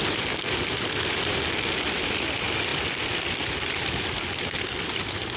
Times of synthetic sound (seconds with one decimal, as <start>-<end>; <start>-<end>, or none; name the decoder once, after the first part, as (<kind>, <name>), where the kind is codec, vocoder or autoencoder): 2.7-3.3 (vocoder, BigVGAN v2)